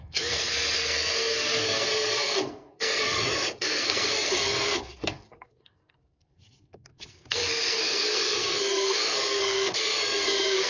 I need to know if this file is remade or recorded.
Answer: remade